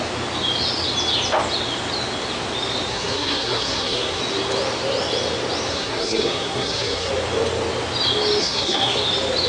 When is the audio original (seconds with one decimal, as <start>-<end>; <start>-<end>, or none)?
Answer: 0.0-2.9; 4.2-5.7; 7.1-8.4; 9.0-9.5